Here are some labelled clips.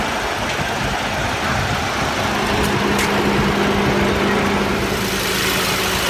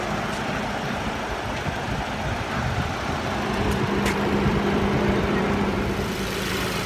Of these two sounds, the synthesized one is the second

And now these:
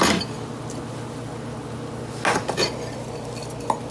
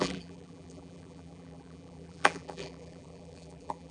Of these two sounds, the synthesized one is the second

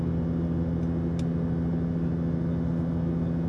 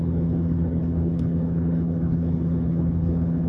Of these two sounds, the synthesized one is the second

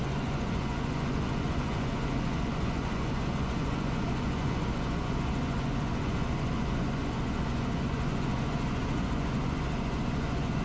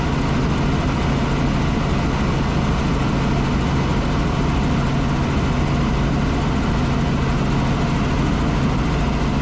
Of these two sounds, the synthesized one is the first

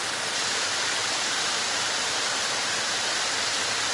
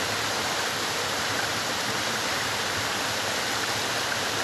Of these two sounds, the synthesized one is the first